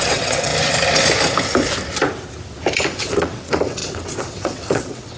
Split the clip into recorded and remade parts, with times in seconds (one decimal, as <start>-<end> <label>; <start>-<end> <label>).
0.0-0.5 remade; 0.5-3.0 recorded; 3.0-5.2 remade